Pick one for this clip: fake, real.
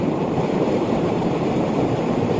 fake